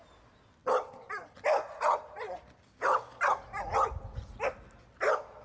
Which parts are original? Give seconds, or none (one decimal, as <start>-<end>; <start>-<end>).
0.0-5.4